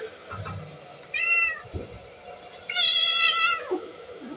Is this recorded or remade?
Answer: recorded